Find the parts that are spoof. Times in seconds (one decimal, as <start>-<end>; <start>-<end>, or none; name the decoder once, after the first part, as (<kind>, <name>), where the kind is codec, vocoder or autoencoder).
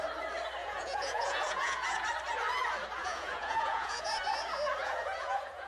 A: 0.6-2.0 (vocoder, Vocos); 3.0-4.1; 4.8-5.7